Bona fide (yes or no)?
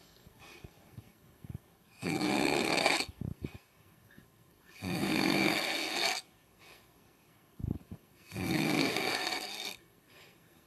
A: no